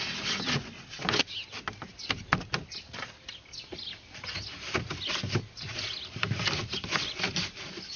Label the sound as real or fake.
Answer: real